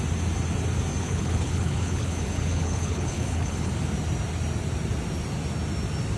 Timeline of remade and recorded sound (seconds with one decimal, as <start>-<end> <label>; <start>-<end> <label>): 0.0-1.0 recorded; 1.0-3.7 remade; 3.7-6.2 recorded